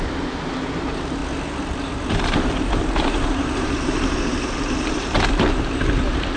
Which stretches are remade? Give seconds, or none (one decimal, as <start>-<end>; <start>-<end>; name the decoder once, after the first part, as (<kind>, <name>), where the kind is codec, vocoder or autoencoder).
0.0-1.2 (vocoder, BigVGAN v2); 2.1-6.4